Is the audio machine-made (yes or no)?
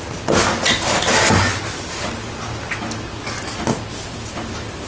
no